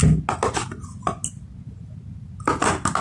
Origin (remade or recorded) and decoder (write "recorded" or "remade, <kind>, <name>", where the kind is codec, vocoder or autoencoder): recorded